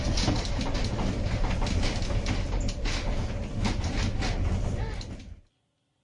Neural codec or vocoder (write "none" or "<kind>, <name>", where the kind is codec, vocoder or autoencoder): none